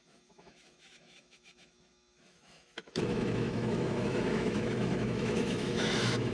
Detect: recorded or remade remade